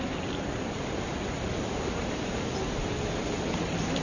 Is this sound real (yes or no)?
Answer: no